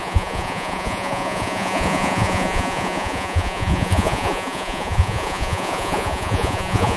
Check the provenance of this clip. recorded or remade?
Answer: remade